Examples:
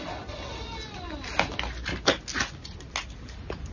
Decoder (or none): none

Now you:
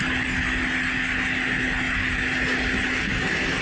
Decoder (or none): none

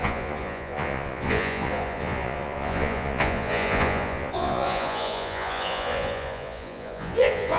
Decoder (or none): vocoder, Vocos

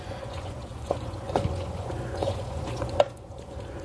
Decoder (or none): vocoder, Vocos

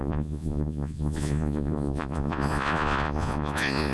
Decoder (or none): vocoder, Vocos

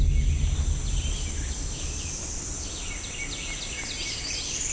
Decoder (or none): none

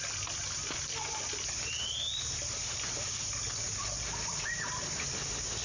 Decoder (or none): none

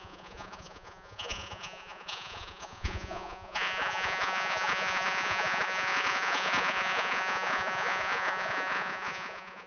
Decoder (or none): vocoder, Vocos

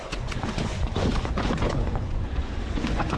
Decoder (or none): vocoder, Vocos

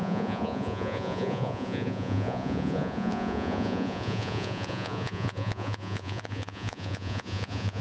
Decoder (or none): vocoder, Vocos